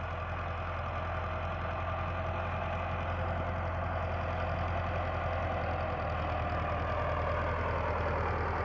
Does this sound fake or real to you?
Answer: real